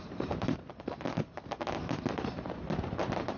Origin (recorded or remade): recorded